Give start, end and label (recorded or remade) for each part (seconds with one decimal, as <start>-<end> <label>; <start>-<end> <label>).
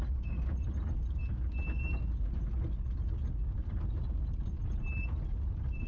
0.0-5.9 recorded